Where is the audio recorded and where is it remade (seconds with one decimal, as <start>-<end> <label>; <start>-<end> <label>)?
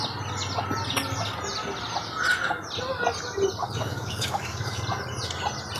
0.0-3.6 recorded; 3.6-4.8 remade; 4.8-5.8 recorded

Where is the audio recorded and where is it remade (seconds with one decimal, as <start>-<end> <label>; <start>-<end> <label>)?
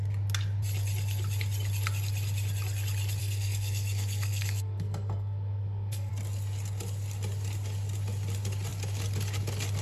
0.0-3.2 recorded; 3.2-6.1 remade; 6.1-9.8 recorded